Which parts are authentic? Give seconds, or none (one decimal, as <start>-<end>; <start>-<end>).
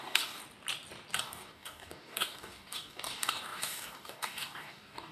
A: 0.4-1.2